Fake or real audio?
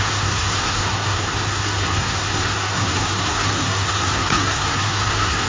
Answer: fake